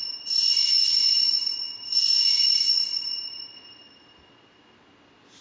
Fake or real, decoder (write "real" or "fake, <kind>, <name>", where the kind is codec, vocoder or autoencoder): real